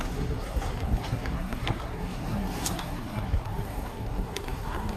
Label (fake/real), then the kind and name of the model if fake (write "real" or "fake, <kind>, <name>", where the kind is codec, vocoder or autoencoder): fake, codec, SNAC